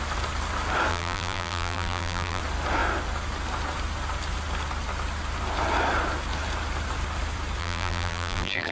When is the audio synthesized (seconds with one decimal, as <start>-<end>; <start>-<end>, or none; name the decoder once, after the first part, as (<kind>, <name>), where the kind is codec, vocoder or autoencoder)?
0.9-2.4 (vocoder, BigVGAN v2); 7.6-8.7